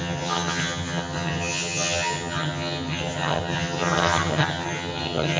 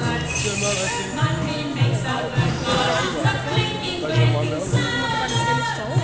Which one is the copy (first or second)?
first